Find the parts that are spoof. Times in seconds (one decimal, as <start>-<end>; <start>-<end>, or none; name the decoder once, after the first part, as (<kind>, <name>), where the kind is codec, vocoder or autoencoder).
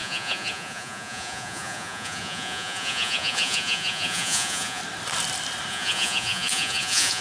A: 0.0-4.8 (vocoder, Vocos); 5.7-7.2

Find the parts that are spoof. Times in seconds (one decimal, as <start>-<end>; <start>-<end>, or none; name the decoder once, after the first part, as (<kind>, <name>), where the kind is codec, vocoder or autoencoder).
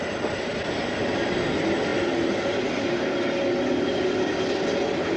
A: none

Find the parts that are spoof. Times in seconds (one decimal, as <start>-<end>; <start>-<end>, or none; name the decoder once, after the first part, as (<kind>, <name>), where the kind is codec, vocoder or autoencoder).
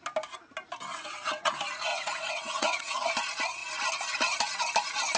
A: 0.9-1.5 (vocoder, WaveNeXt); 1.9-3.1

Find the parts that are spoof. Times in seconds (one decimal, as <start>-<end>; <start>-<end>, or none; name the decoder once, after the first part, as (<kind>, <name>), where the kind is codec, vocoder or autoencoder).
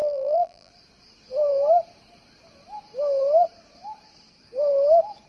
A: 0.0-0.7 (vocoder, BigVGAN v2)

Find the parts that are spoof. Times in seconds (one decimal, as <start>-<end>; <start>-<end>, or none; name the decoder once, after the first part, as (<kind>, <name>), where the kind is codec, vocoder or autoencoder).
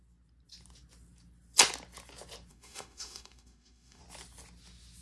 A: 2.5-4.0 (autoencoder, DAC-VAE)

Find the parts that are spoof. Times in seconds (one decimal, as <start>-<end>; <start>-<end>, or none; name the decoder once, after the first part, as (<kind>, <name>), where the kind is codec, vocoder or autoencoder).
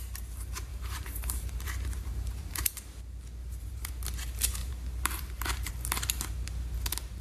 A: 0.7-2.7 (vocoder, BigVGAN v2); 3.4-3.9; 4.6-5.7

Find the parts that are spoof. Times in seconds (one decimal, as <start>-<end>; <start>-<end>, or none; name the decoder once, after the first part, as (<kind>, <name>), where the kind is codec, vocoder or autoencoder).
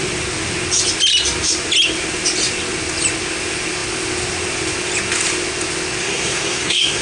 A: 6.0-7.0 (codec, SNAC)